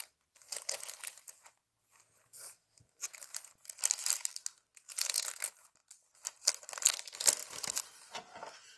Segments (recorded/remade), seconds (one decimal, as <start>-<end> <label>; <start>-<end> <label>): 0.0-8.8 recorded